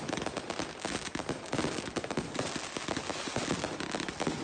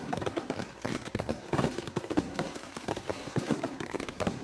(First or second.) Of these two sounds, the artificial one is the second